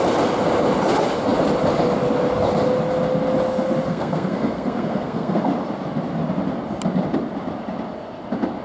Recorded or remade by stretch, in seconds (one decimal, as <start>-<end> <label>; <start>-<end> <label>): 0.0-3.9 recorded; 3.9-5.4 remade; 5.4-8.6 recorded